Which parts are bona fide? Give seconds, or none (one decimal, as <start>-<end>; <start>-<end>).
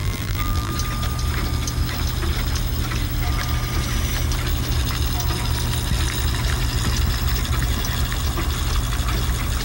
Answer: 0.7-9.6